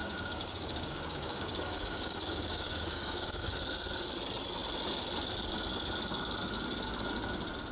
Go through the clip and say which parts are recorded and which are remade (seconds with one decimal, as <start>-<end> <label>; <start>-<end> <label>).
0.0-3.5 remade; 3.5-7.7 recorded